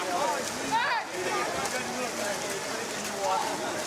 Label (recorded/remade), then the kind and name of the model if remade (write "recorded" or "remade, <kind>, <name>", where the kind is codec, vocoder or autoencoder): recorded